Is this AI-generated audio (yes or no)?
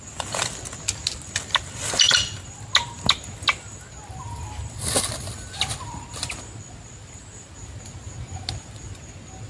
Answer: no